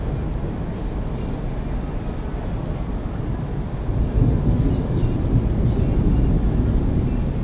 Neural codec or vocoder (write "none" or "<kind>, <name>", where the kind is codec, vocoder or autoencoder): none